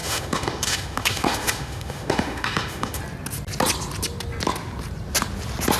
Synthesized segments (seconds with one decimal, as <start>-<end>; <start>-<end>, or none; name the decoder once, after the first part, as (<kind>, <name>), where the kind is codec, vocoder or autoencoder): 0.0-3.0 (autoencoder, DAC-VAE)